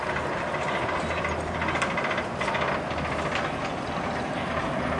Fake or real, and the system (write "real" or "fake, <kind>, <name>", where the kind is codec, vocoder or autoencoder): real